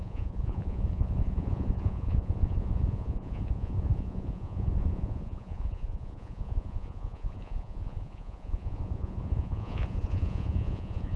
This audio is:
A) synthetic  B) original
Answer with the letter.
A